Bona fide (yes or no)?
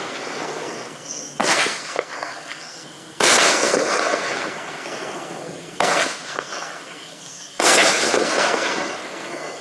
no